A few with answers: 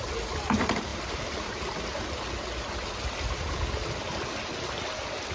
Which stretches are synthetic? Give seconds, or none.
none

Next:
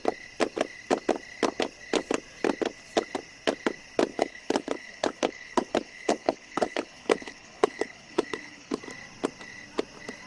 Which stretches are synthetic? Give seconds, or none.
4.1-8.8 (codec, HILCodec)